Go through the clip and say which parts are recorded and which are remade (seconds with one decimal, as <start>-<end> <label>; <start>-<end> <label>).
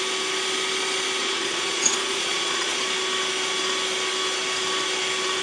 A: 0.0-1.2 recorded; 1.2-2.8 remade; 2.8-5.4 recorded